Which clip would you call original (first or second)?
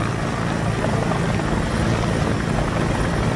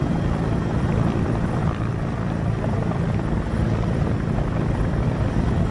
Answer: first